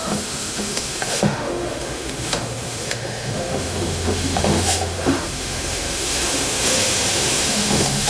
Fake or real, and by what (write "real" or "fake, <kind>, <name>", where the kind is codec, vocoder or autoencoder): fake, autoencoder, DAC-VAE